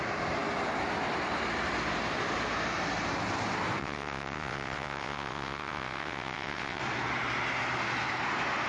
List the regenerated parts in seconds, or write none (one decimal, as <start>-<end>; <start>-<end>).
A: 3.8-6.8